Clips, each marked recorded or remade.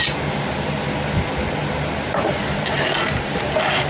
recorded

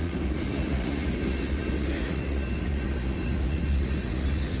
remade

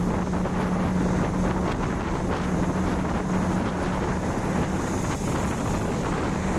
recorded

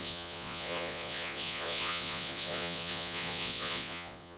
remade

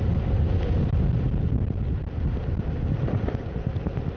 recorded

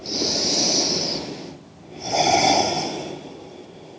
recorded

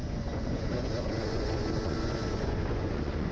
remade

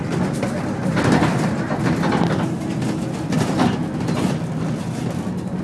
recorded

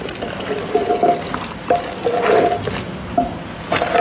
recorded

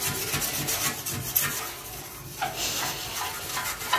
recorded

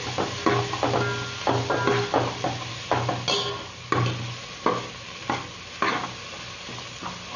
recorded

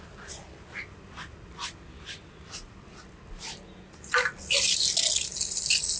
recorded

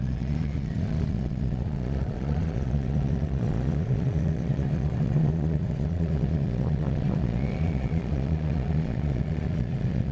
remade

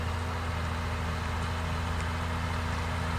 recorded